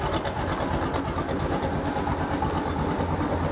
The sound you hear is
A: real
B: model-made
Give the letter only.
A